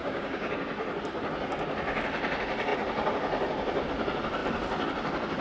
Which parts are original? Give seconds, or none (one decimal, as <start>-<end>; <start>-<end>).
0.5-5.4